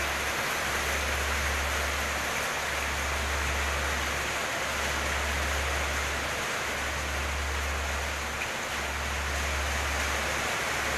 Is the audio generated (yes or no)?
no